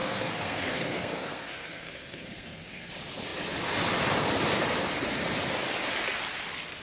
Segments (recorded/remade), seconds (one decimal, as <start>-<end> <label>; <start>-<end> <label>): 0.0-2.9 remade; 2.9-6.8 recorded